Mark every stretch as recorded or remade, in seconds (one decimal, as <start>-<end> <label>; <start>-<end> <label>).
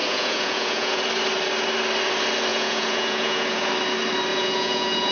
0.0-1.0 remade; 1.0-2.5 recorded; 2.5-3.7 remade; 3.7-4.3 recorded; 4.3-5.1 remade